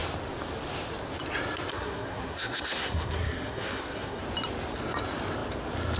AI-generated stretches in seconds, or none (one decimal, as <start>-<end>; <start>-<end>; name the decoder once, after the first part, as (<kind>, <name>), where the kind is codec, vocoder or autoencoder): 1.7-4.2 (codec, SNAC)